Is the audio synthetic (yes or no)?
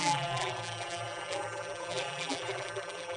yes